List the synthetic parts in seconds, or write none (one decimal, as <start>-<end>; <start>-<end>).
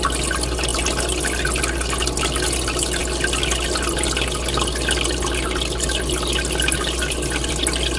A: none